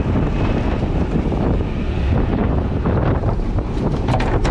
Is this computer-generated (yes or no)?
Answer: yes